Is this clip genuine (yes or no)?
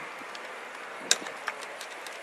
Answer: yes